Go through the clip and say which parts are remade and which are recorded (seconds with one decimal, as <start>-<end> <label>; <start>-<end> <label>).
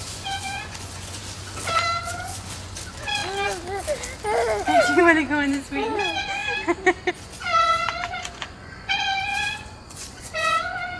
0.0-1.2 remade; 1.2-2.0 recorded; 2.0-3.2 remade; 3.2-5.0 recorded; 5.0-6.4 remade; 6.4-7.1 recorded; 7.1-11.0 remade